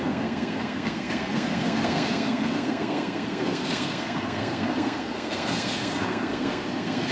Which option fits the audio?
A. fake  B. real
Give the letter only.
A